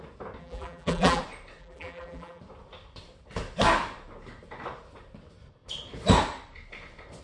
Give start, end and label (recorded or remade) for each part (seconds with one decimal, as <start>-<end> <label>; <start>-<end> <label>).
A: 0.0-0.4 recorded; 0.4-1.2 remade; 1.2-1.6 recorded; 1.6-2.4 remade; 2.4-7.2 recorded